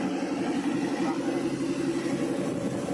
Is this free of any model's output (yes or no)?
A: yes